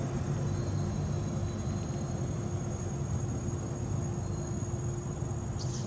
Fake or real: real